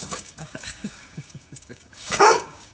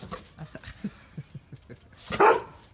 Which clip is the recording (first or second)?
second